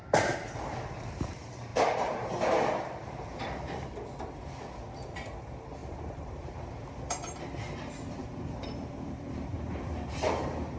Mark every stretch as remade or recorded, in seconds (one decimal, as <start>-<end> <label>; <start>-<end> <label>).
0.0-1.7 recorded; 1.7-2.3 remade; 2.3-5.8 recorded; 5.8-6.6 remade; 6.6-8.2 recorded; 8.2-10.3 remade; 10.3-10.8 recorded